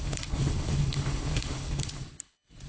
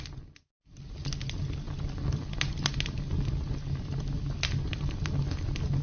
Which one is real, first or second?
second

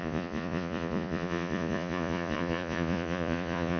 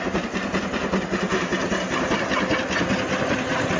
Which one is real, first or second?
second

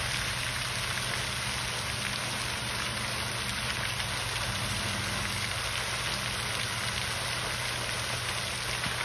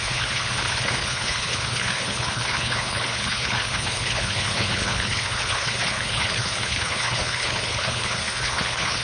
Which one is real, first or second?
first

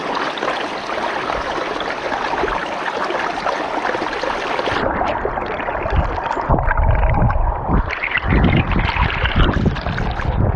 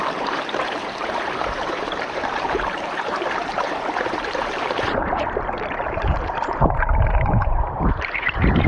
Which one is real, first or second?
first